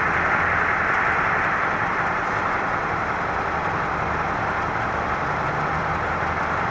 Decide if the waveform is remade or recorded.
remade